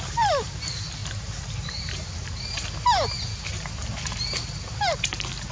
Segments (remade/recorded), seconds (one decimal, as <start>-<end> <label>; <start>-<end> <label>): 0.0-5.5 recorded

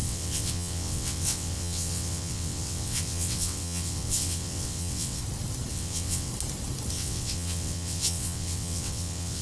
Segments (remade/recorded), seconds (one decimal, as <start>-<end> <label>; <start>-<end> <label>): 0.0-5.2 remade; 5.2-5.7 recorded; 5.7-6.3 remade; 6.3-6.9 recorded; 6.9-9.4 remade